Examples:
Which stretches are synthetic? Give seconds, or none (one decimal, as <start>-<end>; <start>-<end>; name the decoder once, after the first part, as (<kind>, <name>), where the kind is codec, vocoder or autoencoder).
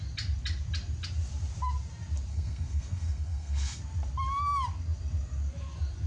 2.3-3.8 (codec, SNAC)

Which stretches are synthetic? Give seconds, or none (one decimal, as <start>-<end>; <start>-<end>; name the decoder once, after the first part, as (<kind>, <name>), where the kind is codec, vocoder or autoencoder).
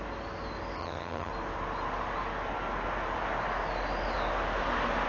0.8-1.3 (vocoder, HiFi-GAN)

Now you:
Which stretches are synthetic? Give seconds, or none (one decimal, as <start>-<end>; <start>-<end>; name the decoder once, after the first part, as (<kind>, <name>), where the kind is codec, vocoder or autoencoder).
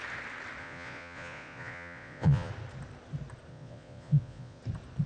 0.6-2.5 (vocoder, Vocos); 3.5-4.6